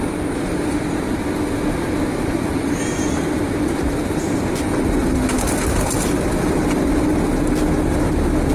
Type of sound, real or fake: real